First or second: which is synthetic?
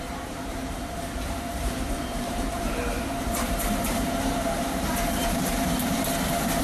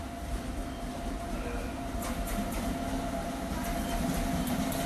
first